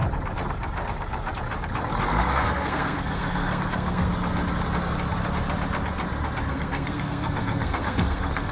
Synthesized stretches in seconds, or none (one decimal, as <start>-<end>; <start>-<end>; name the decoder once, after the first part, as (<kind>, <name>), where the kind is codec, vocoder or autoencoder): 2.1-4.1 (codec, SNAC); 6.5-8.5

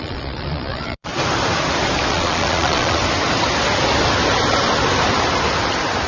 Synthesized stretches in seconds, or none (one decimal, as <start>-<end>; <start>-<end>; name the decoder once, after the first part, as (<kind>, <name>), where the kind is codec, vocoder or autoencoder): 0.0-1.1 (vocoder, Vocos); 2.1-3.0

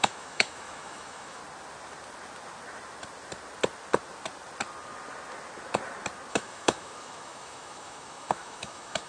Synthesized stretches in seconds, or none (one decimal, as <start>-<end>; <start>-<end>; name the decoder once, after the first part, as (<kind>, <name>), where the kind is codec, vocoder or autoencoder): 0.0-1.4 (autoencoder, DAC-VAE); 6.3-9.1

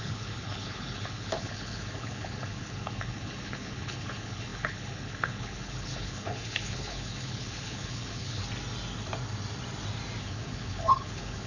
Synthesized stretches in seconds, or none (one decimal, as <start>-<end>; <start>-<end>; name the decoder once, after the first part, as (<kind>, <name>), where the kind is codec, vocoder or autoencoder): 0.0-8.4 (codec, HILCodec); 10.2-11.5

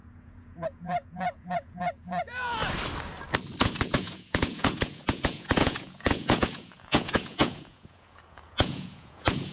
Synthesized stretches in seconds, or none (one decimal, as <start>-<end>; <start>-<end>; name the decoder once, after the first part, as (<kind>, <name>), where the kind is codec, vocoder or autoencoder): 0.0-2.6 (vocoder, Vocos); 3.6-9.5

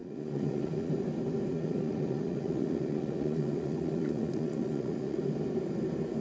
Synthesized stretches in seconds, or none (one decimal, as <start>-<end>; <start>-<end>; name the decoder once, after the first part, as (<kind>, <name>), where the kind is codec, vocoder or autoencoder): 0.0-0.9 (vocoder, Vocos); 1.5-5.2